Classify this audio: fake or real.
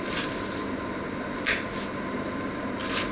real